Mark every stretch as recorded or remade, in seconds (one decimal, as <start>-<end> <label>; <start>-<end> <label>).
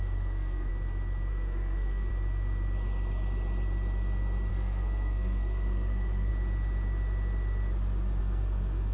0.0-0.7 remade; 0.7-1.3 recorded; 1.3-2.1 remade; 2.1-4.5 recorded; 4.5-6.3 remade; 6.3-8.2 recorded; 8.2-8.9 remade